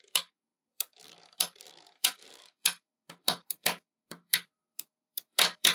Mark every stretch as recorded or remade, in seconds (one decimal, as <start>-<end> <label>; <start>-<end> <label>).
0.0-5.7 remade